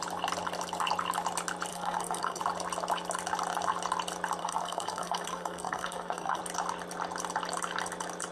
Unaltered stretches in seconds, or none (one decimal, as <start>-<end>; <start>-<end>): 0.0-1.7; 2.4-4.4; 6.4-8.3